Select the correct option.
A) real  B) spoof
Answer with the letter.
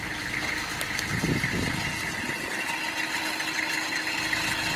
A